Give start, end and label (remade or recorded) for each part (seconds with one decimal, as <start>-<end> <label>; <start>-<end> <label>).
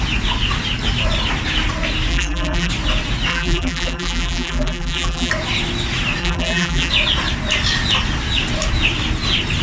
0.0-2.1 recorded; 2.1-2.7 remade; 2.7-3.3 recorded; 3.3-5.3 remade; 5.3-6.2 recorded; 6.2-6.9 remade; 6.9-9.6 recorded